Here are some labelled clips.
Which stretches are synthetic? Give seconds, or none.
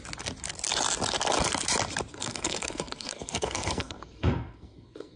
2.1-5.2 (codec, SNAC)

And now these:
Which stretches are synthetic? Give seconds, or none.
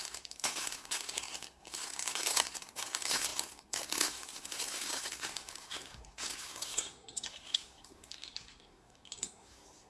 0.0-9.9 (codec, SNAC)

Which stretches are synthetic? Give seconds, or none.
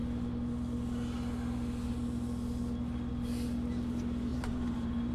4.3-5.1 (vocoder, BigVGAN v2)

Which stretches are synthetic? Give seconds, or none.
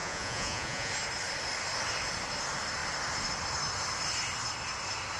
0.0-0.9 (vocoder, Vocos)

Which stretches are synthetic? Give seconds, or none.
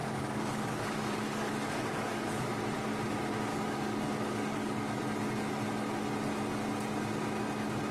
0.0-2.5 (codec, DAC); 3.5-5.0